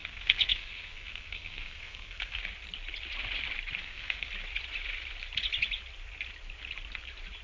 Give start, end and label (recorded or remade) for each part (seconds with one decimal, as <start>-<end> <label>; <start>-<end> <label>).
0.0-2.4 remade; 2.4-3.8 recorded; 3.8-4.3 remade; 4.3-7.4 recorded